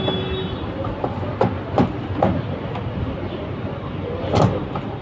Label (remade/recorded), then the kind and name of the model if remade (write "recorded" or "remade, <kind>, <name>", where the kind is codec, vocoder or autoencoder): recorded